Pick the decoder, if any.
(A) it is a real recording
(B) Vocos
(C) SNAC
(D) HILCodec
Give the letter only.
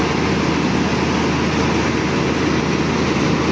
A